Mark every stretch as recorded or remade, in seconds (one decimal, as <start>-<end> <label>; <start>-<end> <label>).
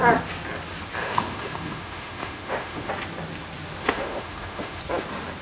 0.0-1.0 recorded; 1.0-2.9 remade; 2.9-3.8 recorded; 3.8-4.8 remade; 4.8-5.4 recorded